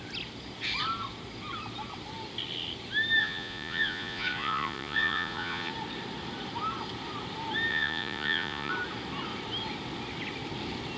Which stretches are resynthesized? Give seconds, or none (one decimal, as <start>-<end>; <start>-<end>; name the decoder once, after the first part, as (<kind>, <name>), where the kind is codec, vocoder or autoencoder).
3.2-5.7 (vocoder, Vocos); 7.7-8.7